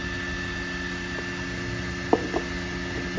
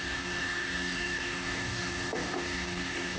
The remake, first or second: second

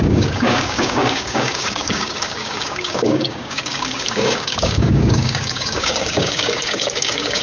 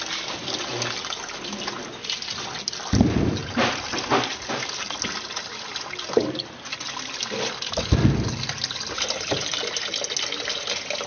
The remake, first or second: first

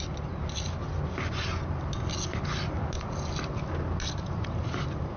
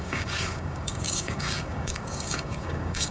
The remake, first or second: second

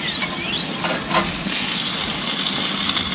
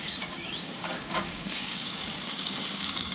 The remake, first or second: second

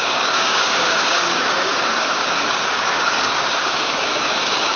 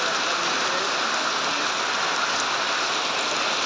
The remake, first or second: first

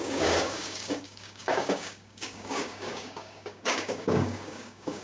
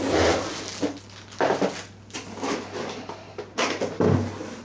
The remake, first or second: first